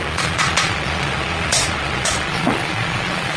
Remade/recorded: remade